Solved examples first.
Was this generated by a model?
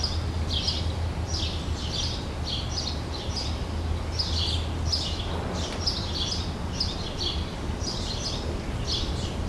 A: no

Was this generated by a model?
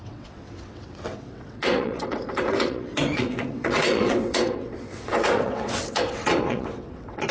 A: yes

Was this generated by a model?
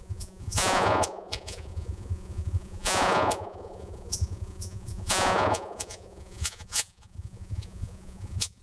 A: yes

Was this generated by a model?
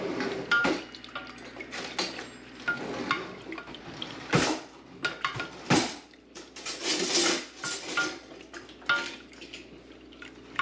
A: no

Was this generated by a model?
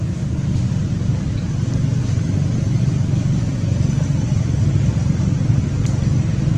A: no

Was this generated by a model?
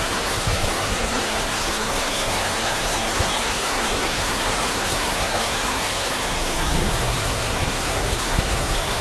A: yes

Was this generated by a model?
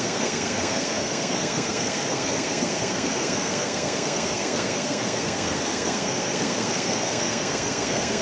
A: yes